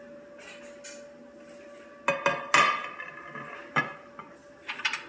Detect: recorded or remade recorded